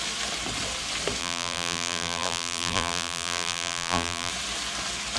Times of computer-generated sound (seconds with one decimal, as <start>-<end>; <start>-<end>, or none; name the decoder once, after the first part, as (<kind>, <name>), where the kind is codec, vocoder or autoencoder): 1.2-4.3 (vocoder, BigVGAN v2)